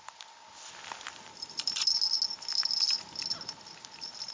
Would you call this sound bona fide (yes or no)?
yes